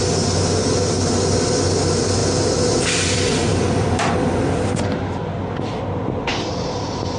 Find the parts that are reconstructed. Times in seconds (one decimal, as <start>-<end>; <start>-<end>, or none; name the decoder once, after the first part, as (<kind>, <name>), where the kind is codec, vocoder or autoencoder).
2.2-4.7 (vocoder, BigVGAN v2)